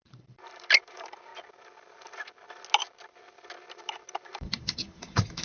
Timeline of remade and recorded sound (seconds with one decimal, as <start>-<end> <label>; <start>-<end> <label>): 0.0-1.3 remade; 1.3-3.7 recorded; 3.7-5.4 remade